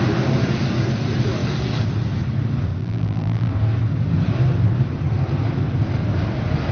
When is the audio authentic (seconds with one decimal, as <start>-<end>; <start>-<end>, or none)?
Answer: 0.0-2.8; 3.5-6.7